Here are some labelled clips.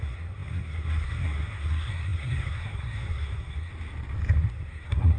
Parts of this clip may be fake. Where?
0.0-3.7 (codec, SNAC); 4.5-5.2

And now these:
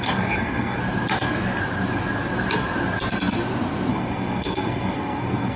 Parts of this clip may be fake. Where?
0.0-0.8 (codec, SNAC); 3.9-5.6

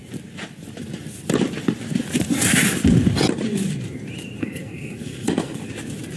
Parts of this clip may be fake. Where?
4.4-5.6 (codec, SNAC)

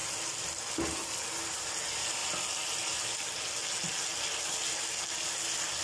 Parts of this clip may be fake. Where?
none

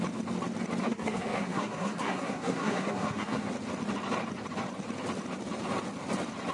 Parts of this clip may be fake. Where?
0.8-3.5 (codec, SNAC)

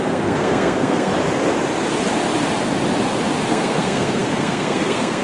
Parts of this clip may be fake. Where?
0.0-1.1 (codec, SNAC); 3.5-5.2